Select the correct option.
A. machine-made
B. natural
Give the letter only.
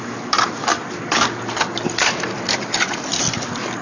B